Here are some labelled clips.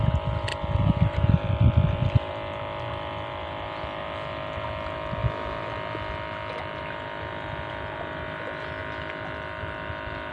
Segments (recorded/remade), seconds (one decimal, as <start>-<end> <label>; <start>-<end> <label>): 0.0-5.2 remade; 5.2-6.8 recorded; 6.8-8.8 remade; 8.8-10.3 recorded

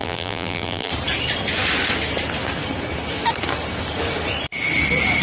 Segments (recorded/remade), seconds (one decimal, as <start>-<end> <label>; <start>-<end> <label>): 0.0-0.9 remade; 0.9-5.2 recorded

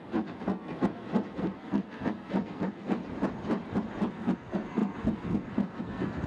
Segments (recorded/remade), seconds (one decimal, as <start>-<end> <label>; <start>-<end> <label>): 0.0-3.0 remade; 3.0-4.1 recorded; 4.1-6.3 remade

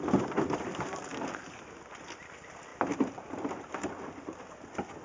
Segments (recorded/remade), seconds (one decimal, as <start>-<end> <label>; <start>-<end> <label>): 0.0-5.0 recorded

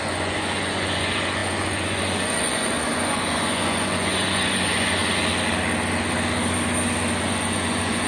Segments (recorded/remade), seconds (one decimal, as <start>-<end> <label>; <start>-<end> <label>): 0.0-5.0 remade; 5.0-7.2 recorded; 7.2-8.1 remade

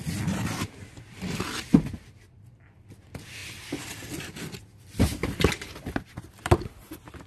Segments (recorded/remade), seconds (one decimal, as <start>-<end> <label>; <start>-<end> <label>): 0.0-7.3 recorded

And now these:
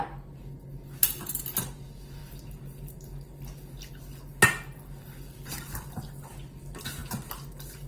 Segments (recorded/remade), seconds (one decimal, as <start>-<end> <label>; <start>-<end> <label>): 0.0-7.9 recorded

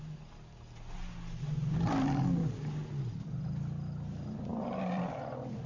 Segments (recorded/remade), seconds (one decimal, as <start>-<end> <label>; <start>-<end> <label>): 0.0-4.5 recorded; 4.5-5.1 remade; 5.1-5.7 recorded